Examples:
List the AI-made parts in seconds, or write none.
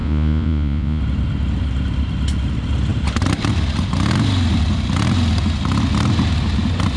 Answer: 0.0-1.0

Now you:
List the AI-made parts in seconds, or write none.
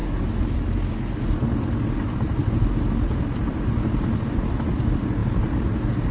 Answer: none